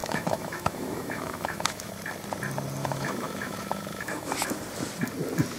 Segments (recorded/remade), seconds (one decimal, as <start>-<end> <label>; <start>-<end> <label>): 0.0-1.9 remade; 1.9-2.8 recorded; 2.8-4.6 remade; 4.6-5.6 recorded